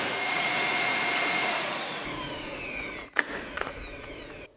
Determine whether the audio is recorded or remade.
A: remade